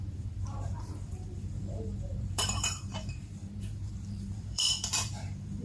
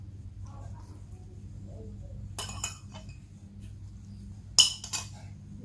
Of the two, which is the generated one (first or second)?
first